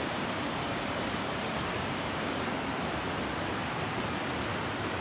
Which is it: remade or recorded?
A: recorded